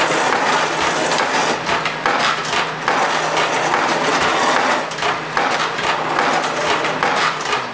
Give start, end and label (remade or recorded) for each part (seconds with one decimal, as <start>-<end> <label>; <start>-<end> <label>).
0.0-7.7 recorded